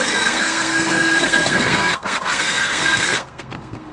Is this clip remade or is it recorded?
remade